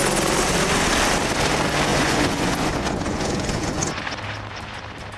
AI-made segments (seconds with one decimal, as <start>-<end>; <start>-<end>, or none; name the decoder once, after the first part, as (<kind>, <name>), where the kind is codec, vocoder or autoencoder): 1.9-4.0 (vocoder, Vocos)